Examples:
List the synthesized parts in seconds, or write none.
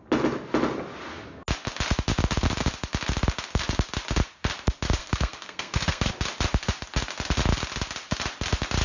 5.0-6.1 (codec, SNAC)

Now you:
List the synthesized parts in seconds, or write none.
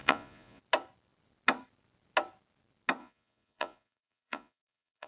0.0-0.6 (vocoder, Vocos); 3.0-5.1